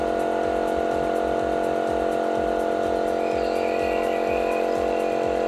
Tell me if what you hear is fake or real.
real